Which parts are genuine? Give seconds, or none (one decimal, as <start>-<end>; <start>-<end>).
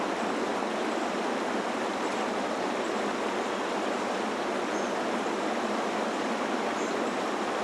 0.5-5.1